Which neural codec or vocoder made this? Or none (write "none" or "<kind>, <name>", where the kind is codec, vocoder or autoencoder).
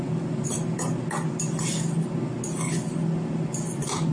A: none